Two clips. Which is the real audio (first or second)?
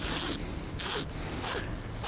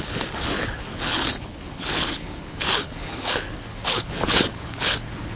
first